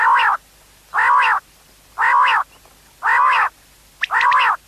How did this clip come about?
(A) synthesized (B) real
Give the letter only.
B